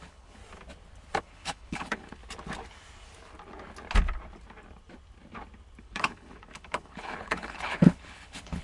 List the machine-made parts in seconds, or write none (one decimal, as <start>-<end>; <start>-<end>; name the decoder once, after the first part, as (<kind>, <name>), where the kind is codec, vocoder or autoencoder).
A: 0.0-0.4 (codec, HILCodec); 1.2-2.2; 5.8-8.6